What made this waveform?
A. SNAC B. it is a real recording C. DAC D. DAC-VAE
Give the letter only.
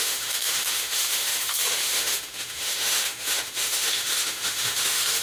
D